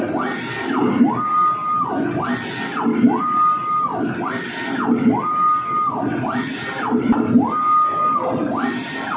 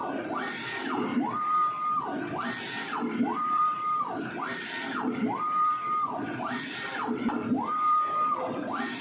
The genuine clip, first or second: first